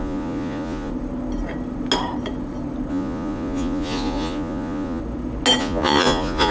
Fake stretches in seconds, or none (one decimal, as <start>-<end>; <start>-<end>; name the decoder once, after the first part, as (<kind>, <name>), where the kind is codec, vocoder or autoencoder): 0.0-0.9 (vocoder, Vocos); 2.9-5.0; 5.6-6.5